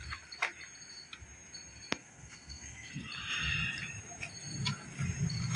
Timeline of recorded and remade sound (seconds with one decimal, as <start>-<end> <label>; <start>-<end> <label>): 0.0-2.0 recorded; 2.0-2.9 remade; 2.9-5.6 recorded